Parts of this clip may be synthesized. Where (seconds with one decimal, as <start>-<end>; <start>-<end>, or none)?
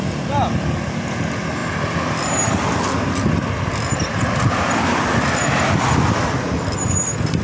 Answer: none